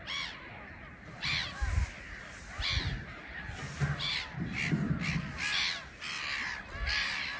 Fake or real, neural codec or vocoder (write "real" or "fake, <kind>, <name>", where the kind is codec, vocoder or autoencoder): real